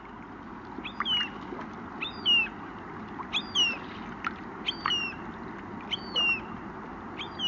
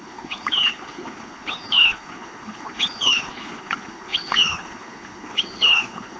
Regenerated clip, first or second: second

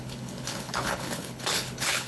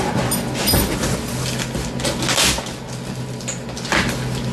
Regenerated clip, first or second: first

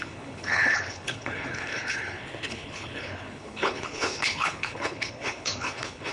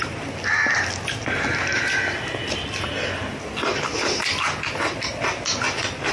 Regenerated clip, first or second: first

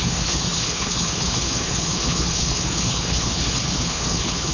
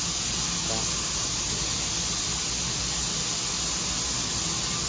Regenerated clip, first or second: first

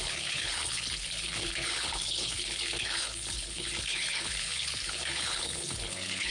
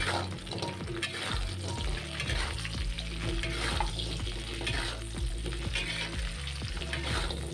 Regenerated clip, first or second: first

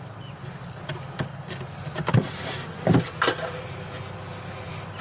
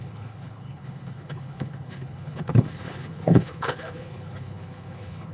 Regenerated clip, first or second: second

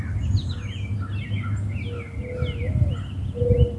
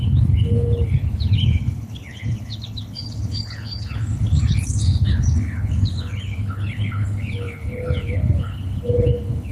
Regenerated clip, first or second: second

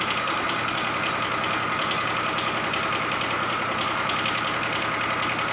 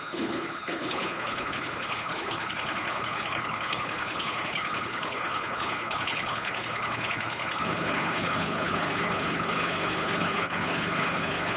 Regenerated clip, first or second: second